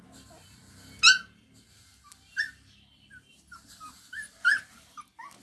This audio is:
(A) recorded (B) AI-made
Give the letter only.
A